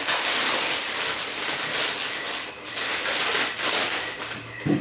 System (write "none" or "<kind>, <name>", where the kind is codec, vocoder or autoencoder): none